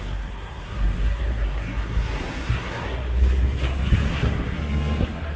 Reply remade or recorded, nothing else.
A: remade